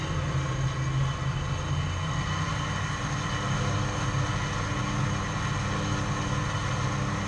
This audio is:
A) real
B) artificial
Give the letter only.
A